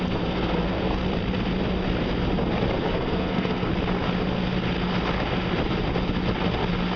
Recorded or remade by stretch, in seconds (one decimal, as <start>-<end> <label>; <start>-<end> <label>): 0.0-1.0 remade; 1.0-2.9 recorded; 2.9-3.7 remade; 3.7-7.0 recorded